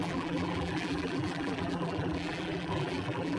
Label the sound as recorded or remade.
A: remade